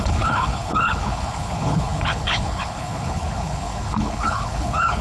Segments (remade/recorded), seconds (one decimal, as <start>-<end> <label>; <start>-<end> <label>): 0.0-5.0 remade